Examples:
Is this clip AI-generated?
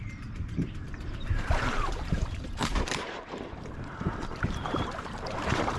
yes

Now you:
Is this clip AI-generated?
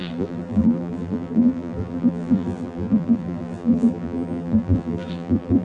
yes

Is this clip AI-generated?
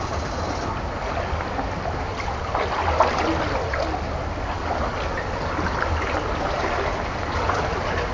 no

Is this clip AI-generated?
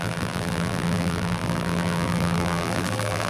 yes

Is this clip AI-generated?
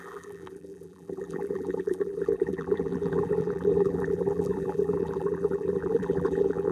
yes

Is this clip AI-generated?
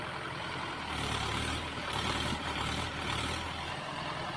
yes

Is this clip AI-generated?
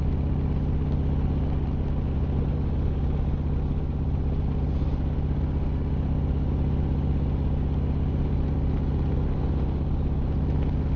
no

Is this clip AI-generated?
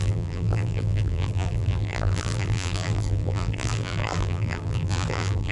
yes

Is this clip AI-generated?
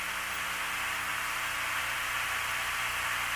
no